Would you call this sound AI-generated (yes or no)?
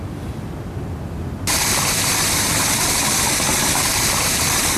no